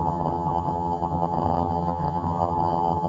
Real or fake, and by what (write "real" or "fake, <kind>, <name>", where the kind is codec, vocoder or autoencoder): fake, vocoder, HiFi-GAN